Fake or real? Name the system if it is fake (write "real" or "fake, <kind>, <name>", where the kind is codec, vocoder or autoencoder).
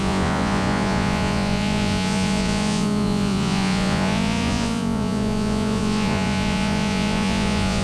fake, vocoder, Vocos